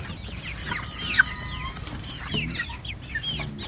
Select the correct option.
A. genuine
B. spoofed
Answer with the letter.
A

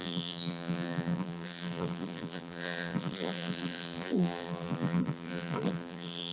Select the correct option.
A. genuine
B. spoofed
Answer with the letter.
B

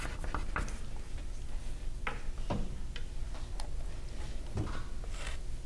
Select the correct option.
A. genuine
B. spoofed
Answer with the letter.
A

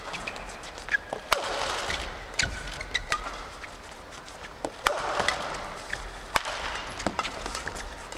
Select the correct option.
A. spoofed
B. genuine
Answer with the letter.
B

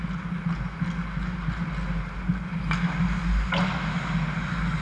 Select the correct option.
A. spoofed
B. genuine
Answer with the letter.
B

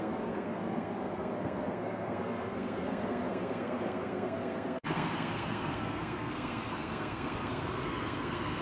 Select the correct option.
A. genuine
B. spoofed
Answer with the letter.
B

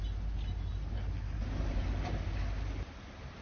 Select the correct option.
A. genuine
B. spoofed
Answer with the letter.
A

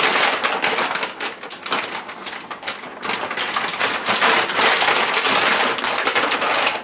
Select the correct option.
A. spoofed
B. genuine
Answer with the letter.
B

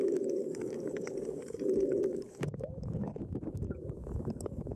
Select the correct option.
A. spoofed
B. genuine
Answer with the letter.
A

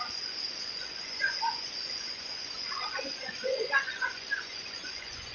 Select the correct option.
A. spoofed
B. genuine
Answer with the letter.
A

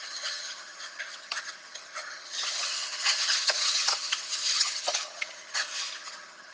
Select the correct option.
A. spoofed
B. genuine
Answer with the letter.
A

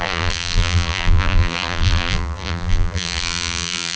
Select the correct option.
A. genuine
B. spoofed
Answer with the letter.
B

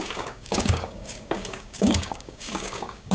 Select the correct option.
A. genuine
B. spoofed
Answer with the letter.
B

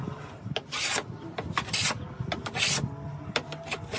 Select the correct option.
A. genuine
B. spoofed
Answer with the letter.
A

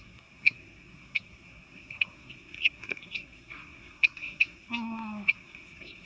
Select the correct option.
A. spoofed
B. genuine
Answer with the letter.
A